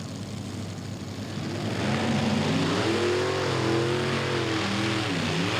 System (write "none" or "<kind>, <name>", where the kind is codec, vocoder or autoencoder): none